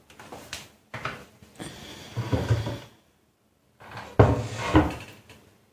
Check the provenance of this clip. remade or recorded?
recorded